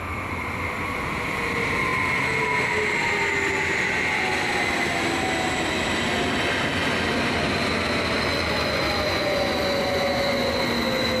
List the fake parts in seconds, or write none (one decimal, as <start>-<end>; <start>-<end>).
8.3-10.6